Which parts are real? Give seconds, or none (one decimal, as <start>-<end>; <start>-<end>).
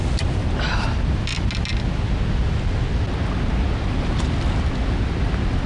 0.0-5.7